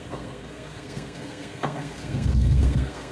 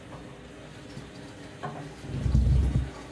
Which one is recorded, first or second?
second